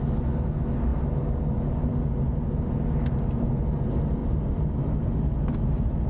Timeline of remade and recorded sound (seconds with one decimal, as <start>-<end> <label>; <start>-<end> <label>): 0.0-6.1 recorded